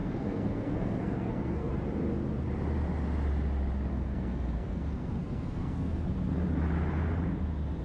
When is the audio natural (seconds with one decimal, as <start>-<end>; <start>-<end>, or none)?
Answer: 1.7-3.9; 6.1-7.8